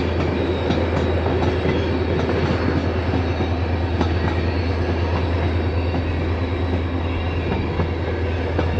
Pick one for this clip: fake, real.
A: real